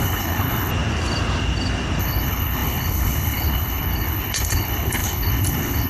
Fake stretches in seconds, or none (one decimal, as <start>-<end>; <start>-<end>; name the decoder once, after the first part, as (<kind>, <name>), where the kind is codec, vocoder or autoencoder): 0.0-0.7 (codec, HILCodec); 2.0-5.9